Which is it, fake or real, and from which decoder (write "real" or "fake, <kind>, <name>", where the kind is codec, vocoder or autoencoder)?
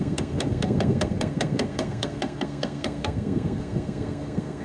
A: fake, codec, SNAC